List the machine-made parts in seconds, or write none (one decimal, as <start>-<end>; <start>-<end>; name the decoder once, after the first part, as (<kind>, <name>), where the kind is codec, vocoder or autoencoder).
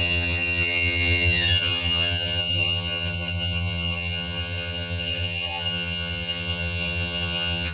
0.0-7.7 (vocoder, HiFi-GAN)